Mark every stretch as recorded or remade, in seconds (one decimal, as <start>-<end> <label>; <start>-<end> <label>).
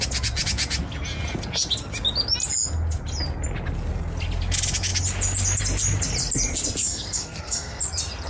0.0-6.8 recorded; 6.8-7.8 remade; 7.8-8.3 recorded